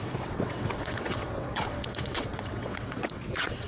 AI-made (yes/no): yes